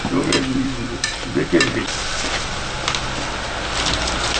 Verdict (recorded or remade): recorded